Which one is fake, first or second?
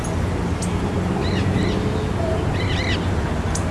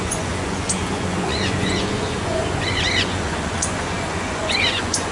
second